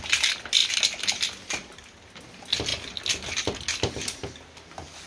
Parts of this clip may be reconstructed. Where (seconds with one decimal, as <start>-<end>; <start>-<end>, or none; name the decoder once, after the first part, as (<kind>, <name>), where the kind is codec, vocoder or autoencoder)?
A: none

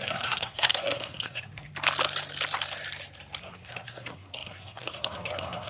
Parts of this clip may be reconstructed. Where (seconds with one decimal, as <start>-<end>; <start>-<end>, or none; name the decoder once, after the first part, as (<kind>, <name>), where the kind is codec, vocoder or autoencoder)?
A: 0.0-1.7 (codec, SNAC); 3.4-5.7

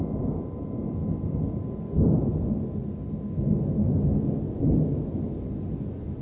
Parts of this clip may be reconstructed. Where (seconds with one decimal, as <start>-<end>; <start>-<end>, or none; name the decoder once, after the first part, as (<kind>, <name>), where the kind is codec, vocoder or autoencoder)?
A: none

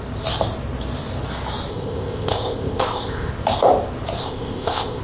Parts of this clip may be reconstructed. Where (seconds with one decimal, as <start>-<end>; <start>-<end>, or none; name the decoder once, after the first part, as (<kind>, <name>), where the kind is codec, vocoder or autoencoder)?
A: 1.7-3.3 (codec, ZipCodec); 4.2-5.0

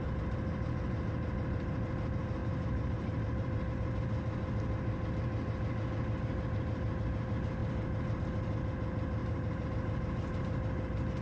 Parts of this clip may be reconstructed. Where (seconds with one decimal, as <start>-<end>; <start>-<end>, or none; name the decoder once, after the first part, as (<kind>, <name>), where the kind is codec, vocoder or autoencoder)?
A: 2.4-3.7 (vocoder, BigVGAN v2); 9.2-9.7

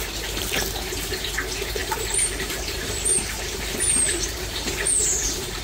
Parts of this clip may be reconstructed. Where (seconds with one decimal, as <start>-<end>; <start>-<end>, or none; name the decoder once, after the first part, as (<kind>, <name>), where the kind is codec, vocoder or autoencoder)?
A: 1.8-5.6 (vocoder, BigVGAN v2)

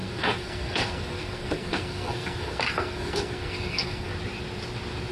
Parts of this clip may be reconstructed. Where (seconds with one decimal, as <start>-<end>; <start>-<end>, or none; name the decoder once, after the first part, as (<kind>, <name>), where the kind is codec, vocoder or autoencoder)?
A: 0.0-4.1 (codec, SNAC)

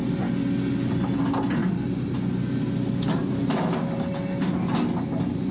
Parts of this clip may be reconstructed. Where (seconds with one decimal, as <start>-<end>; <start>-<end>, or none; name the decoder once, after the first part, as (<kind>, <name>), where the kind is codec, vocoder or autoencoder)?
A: none